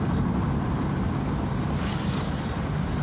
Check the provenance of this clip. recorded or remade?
recorded